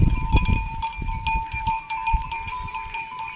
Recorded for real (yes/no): no